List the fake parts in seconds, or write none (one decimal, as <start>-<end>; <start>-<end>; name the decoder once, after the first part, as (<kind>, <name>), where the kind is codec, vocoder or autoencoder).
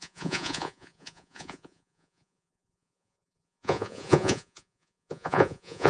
0.0-5.9 (vocoder, Vocos)